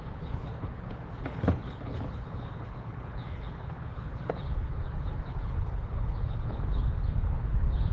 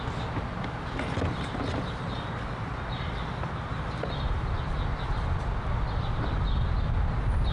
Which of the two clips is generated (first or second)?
first